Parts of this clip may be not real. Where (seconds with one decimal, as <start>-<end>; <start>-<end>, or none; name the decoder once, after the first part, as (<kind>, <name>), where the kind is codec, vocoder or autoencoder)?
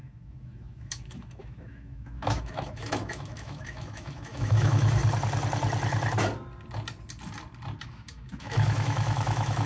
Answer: 0.0-5.0 (autoencoder, DAC-VAE); 7.8-9.7